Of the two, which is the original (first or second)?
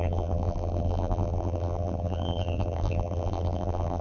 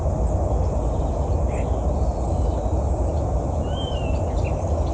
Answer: second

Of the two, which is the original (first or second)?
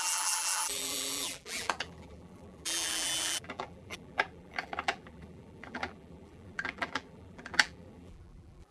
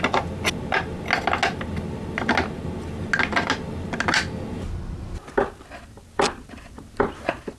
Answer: second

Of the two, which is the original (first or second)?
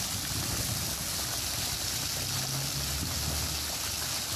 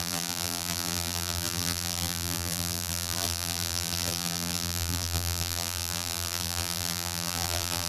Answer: first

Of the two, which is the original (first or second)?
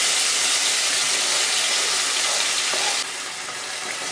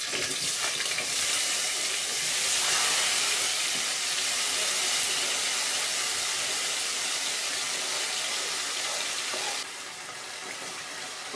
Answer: first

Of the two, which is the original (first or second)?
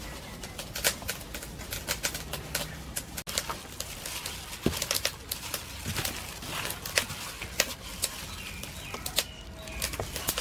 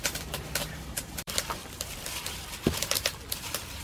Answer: first